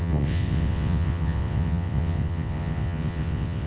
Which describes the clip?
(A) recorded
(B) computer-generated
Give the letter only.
B